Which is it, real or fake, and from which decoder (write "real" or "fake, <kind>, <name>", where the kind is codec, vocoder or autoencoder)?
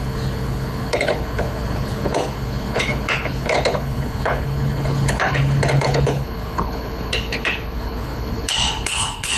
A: fake, codec, HILCodec